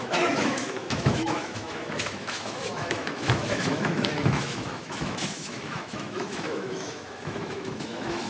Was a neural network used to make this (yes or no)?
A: yes